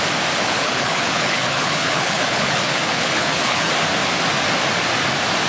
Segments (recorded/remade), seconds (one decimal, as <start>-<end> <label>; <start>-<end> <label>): 0.0-0.4 recorded; 0.4-3.7 remade; 3.7-5.5 recorded